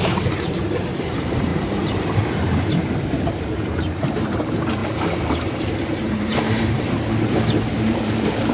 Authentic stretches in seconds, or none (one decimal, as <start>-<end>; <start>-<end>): 1.5-3.3